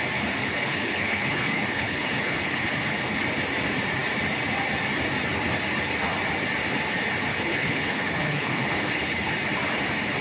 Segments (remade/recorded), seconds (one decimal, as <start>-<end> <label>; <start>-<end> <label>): 0.0-0.4 recorded; 0.4-3.2 remade; 3.2-7.3 recorded; 7.3-9.3 remade; 9.3-10.2 recorded